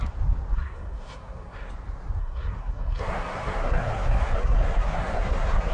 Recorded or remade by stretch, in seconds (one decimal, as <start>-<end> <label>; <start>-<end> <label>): 0.0-0.5 recorded; 0.5-1.7 remade; 1.7-2.2 recorded; 2.2-5.7 remade